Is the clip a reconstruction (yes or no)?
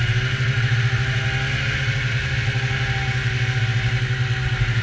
no